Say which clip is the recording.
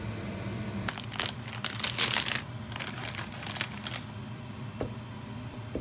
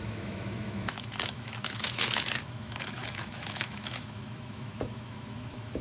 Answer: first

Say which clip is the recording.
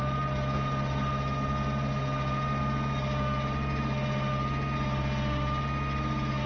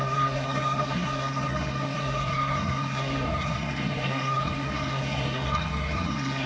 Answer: first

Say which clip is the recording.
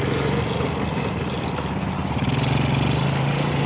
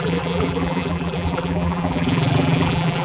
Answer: first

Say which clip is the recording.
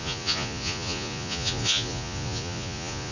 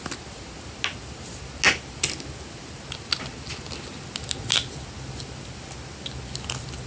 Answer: second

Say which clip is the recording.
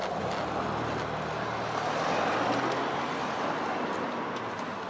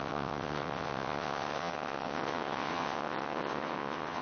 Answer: first